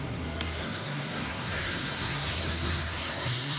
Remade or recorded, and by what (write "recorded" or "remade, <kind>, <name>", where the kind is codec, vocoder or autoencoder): remade, codec, SNAC